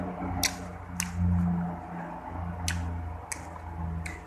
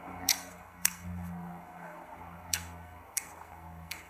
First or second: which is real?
first